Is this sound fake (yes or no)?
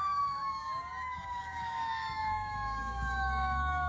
yes